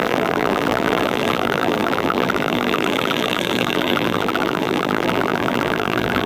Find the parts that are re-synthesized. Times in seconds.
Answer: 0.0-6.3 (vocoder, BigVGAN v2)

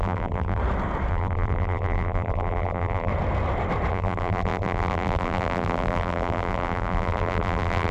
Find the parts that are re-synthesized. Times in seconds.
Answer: 0.0-0.6 (vocoder, BigVGAN v2); 1.1-3.1; 3.9-7.9

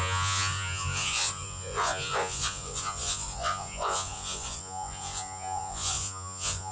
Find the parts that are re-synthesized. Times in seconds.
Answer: 0.0-6.7 (vocoder, Vocos)

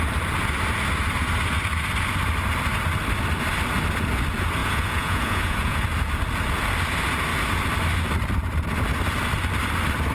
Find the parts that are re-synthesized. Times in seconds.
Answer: 4.6-5.9 (vocoder, Vocos)

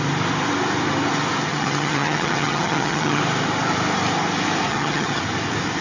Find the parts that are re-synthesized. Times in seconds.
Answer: 1.5-3.2 (vocoder, HiFi-GAN); 4.7-5.2

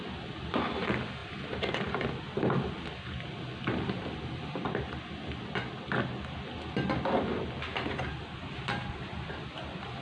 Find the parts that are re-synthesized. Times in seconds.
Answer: 7.7-9.4 (vocoder, BigVGAN v2)

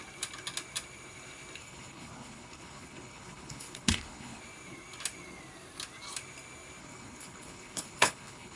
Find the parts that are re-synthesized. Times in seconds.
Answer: 1.6-4.4 (codec, HILCodec); 6.8-8.6